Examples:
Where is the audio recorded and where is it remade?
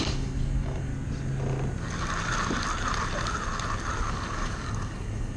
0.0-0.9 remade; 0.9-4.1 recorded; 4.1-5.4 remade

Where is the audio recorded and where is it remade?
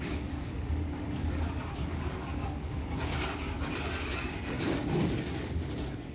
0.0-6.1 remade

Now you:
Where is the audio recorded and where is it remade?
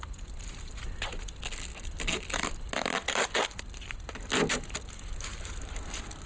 0.0-6.3 recorded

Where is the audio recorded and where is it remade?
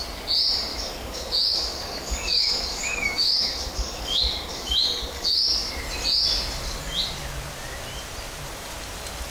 0.0-0.7 recorded; 0.7-5.7 remade; 5.7-9.3 recorded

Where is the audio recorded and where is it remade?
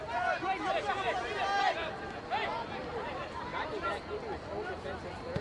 0.0-5.4 recorded